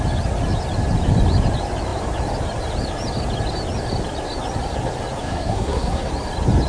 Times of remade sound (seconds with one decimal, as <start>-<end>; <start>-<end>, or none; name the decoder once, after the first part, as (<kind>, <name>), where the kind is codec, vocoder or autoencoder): 5.2-6.1 (codec, SNAC)